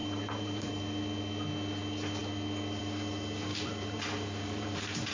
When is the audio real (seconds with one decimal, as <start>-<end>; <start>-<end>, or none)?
0.7-3.5